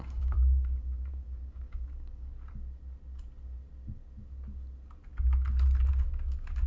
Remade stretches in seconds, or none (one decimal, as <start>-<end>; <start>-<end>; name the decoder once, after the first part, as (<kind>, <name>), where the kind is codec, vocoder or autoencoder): 0.0-2.3 (codec, DAC); 5.9-6.7